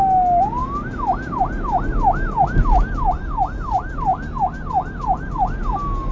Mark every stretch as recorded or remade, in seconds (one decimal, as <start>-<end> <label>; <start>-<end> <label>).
0.0-6.1 recorded